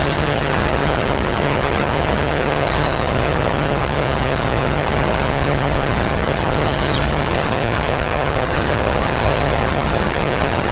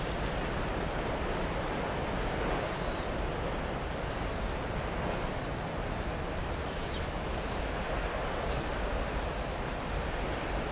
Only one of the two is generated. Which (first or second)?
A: first